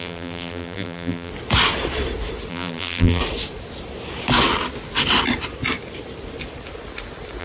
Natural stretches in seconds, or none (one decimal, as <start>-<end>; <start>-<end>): 1.3-2.5; 3.2-7.4

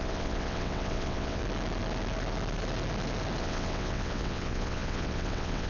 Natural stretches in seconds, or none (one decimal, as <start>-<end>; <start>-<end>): 1.4-3.4

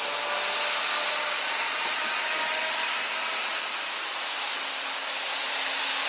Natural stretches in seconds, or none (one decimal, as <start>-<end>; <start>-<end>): 0.0-6.1

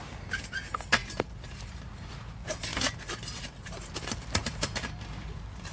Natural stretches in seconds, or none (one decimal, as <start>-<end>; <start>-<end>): 0.0-1.0; 2.1-4.4

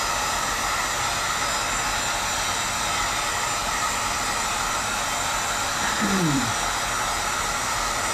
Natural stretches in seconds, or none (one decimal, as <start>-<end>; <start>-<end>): 0.0-3.6; 6.5-8.1